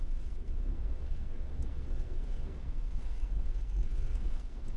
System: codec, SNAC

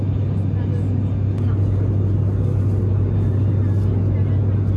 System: none